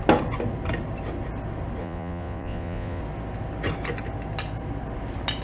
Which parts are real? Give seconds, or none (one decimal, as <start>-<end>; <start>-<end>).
0.0-1.8; 3.0-5.4